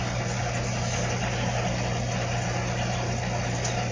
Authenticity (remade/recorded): recorded